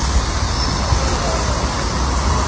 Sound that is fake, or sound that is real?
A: real